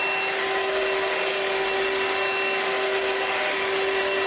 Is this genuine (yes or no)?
yes